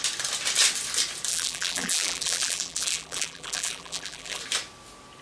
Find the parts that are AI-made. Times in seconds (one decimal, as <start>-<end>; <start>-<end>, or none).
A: 1.3-4.4

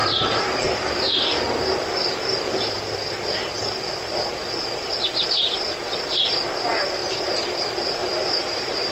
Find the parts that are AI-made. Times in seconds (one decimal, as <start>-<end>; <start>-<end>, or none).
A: 7.0-7.6; 8.0-8.9

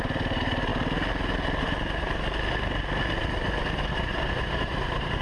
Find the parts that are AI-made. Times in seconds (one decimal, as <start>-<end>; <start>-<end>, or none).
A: 0.0-0.7; 3.8-5.2